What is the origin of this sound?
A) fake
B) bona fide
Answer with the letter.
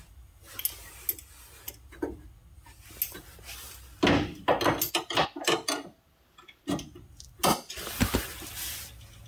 B